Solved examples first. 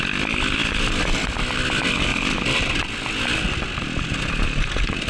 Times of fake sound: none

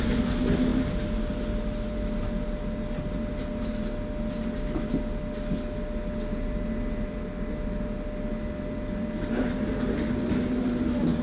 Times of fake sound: none

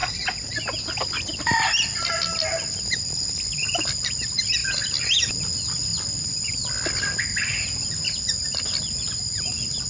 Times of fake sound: none

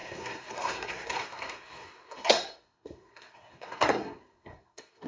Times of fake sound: 0.0-5.1 (codec, SNAC)

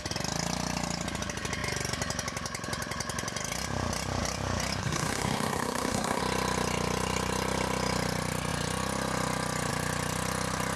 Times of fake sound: 4.8-6.2 (codec, SNAC)

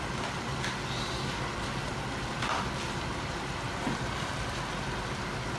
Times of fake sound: none

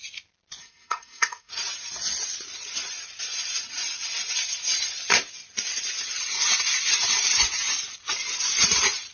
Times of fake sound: 0.6-1.5 (codec, SNAC)

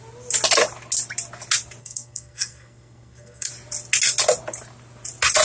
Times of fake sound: 1.8-3.5 (codec, SNAC)